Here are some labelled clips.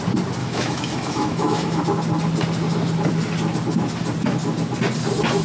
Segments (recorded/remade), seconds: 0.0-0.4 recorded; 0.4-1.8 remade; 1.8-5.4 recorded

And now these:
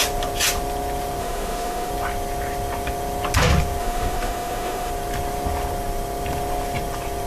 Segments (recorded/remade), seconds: 0.0-1.2 recorded; 1.2-1.9 remade; 1.9-3.8 recorded; 3.8-4.9 remade; 4.9-7.3 recorded